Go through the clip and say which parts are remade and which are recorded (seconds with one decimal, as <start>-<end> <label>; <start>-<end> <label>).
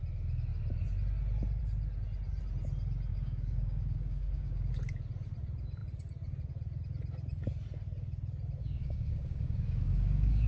0.0-3.1 recorded; 3.1-4.7 remade; 4.7-8.6 recorded; 8.6-10.5 remade